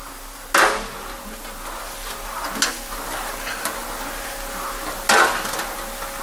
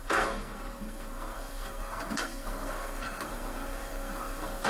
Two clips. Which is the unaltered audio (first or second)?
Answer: first